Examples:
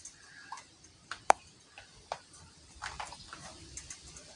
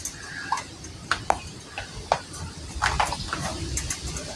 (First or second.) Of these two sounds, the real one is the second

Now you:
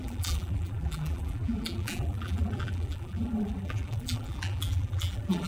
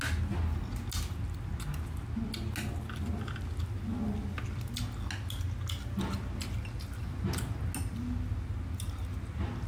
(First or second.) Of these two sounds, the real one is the second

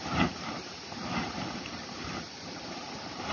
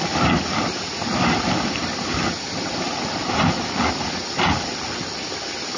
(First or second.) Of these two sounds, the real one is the second